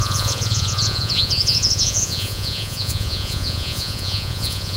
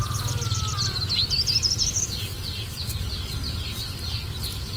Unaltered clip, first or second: second